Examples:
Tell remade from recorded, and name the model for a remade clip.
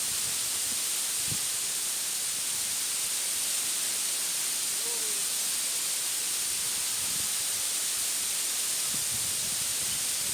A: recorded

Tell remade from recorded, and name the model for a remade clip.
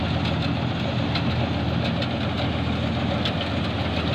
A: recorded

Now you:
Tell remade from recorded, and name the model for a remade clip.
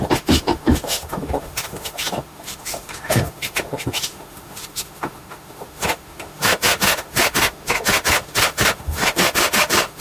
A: remade, autoencoder, DAC-VAE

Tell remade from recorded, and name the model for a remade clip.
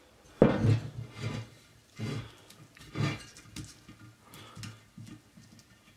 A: recorded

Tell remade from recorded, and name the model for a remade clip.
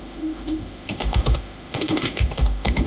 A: remade, autoencoder, DAC-VAE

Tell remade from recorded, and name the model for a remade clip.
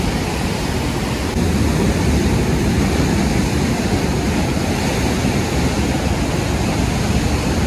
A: recorded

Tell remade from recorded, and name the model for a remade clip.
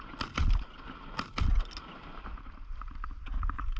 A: recorded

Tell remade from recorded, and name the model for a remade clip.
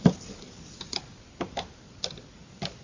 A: recorded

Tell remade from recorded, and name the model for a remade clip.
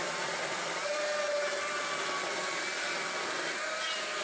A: recorded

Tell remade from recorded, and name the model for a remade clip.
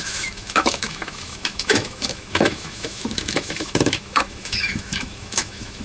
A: remade, autoencoder, DAC-VAE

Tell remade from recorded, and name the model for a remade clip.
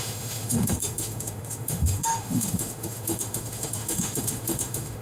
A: remade, autoencoder, DAC-VAE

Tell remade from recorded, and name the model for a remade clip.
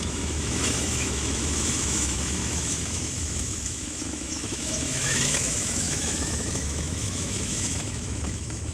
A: remade, autoencoder, DAC-VAE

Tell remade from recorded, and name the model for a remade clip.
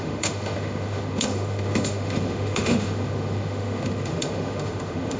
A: remade, autoencoder, DAC-VAE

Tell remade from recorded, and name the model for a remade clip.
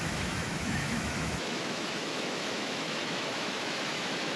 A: remade, autoencoder, DAC-VAE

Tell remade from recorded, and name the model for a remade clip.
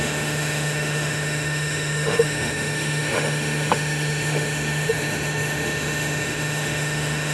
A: remade, autoencoder, DAC-VAE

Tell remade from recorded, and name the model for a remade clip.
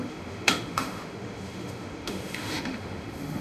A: remade, autoencoder, DAC-VAE